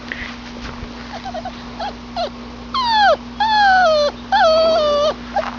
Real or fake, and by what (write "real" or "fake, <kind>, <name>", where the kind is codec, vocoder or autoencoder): real